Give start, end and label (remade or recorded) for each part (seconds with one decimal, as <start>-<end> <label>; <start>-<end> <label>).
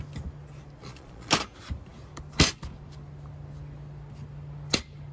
0.0-0.8 recorded; 0.8-1.3 remade; 1.3-5.1 recorded